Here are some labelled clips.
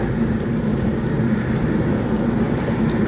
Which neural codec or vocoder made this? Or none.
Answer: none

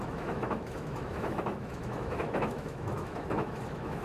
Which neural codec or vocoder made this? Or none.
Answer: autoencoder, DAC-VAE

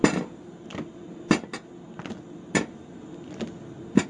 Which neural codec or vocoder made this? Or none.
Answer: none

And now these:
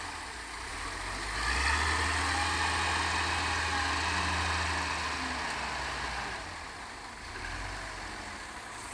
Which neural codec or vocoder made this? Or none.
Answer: none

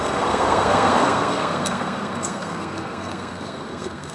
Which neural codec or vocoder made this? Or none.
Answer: codec, SNAC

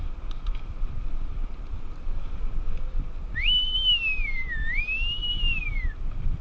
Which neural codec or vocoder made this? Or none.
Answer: none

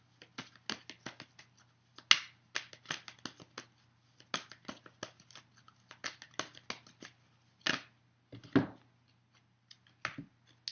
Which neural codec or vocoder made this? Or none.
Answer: none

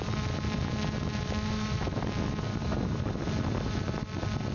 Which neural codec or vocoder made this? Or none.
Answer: none